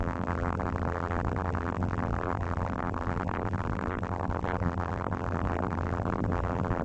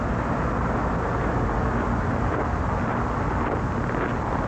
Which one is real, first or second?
second